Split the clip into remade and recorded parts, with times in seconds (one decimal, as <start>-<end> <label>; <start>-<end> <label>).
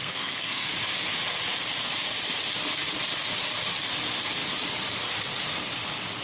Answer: 0.0-0.7 remade; 0.7-6.2 recorded